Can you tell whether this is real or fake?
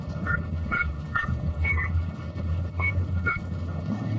fake